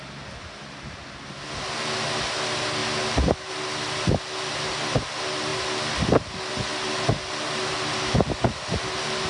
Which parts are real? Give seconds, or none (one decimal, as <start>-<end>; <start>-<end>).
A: 0.0-9.3